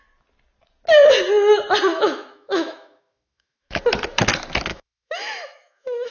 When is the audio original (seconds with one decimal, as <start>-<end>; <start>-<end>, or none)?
0.0-1.9; 3.8-4.7